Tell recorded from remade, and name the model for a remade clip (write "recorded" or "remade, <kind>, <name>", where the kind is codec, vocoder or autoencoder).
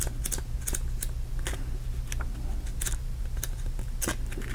recorded